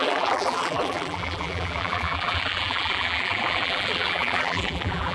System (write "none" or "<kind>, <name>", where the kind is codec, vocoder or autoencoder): vocoder, BigVGAN v2